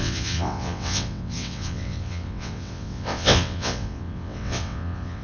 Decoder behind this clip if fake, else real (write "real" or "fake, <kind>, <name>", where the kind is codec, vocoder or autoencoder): fake, vocoder, WaveNeXt